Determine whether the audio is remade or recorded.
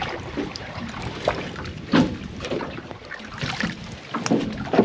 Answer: recorded